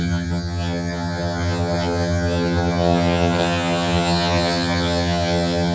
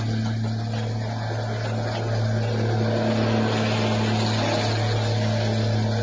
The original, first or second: second